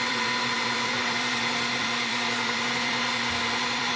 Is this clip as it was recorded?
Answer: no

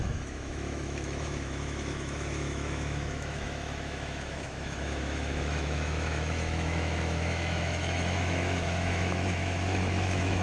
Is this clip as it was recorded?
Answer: no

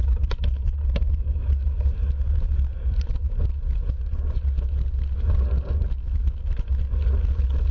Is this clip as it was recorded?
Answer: yes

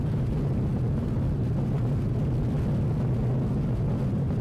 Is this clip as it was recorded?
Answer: yes